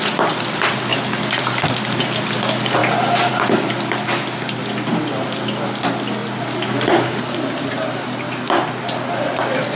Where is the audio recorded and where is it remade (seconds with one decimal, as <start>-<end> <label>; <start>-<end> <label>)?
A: 0.0-9.8 recorded